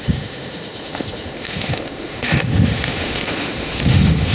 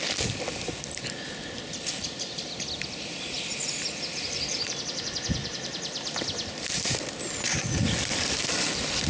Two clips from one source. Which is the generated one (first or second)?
first